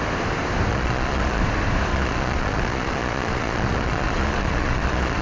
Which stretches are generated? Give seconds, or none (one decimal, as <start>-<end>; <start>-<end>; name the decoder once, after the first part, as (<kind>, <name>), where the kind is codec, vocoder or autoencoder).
0.7-1.4 (vocoder, Vocos); 1.9-5.2